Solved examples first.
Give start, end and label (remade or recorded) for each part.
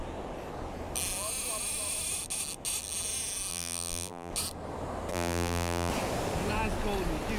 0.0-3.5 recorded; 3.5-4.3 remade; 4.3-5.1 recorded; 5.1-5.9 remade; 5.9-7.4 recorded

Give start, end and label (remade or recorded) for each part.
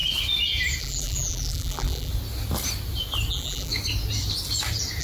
0.0-0.8 recorded; 0.8-2.1 remade; 2.1-3.3 recorded; 3.3-3.7 remade; 3.7-5.0 recorded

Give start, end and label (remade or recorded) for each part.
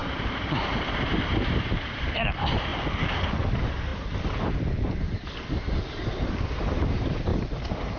0.0-2.7 remade; 2.7-3.5 recorded; 3.5-3.9 remade; 3.9-6.5 recorded; 6.5-7.3 remade; 7.3-8.0 recorded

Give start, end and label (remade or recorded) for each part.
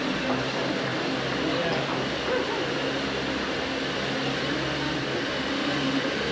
0.0-6.3 recorded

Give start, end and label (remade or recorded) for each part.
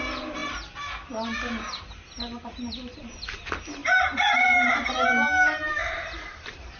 0.0-3.8 recorded; 3.8-4.7 remade; 4.7-5.8 recorded; 5.8-6.8 remade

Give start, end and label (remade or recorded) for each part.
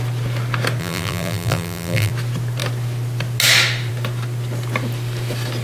0.0-0.8 recorded; 0.8-2.1 remade; 2.1-5.6 recorded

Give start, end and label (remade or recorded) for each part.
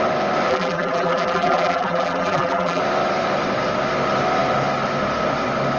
0.0-0.5 recorded; 0.5-2.8 remade; 2.8-5.8 recorded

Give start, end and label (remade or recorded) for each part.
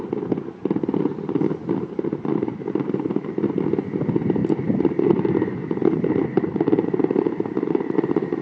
0.0-1.6 recorded; 1.6-3.5 remade; 3.5-4.4 recorded; 4.4-5.3 remade; 5.3-5.8 recorded; 5.8-8.4 remade